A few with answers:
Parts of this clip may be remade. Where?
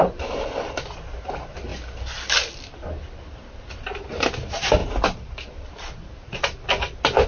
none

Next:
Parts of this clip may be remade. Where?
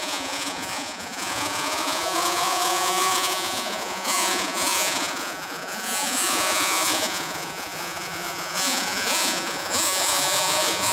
0.0-10.9 (vocoder, Vocos)